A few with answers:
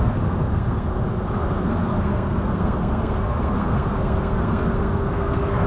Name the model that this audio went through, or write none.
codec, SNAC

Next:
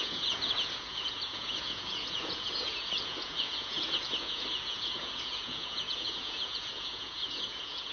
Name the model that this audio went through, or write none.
vocoder, Vocos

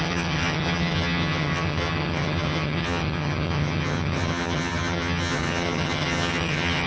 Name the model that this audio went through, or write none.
vocoder, HiFi-GAN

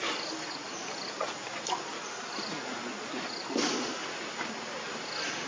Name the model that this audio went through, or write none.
none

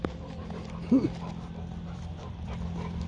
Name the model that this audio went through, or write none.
none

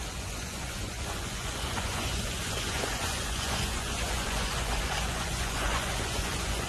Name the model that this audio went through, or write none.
vocoder, Vocos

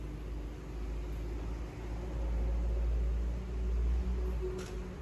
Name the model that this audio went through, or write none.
none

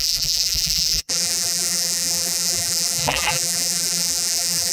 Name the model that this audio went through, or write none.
vocoder, BigVGAN v2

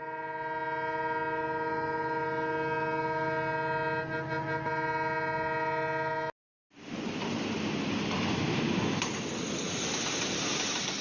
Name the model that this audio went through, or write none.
none